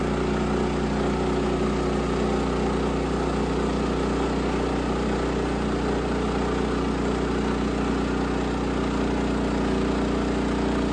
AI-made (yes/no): no